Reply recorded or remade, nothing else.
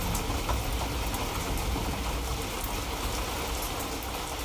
recorded